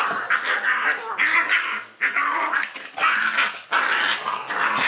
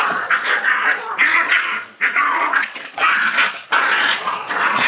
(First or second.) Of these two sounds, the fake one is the second